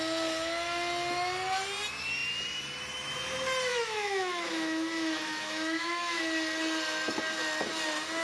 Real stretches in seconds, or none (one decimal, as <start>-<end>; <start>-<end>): 0.0-3.7; 6.2-8.2